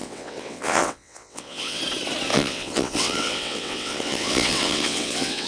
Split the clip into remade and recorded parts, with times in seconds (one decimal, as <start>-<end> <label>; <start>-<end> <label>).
0.0-1.8 remade; 1.8-2.3 recorded; 2.3-5.5 remade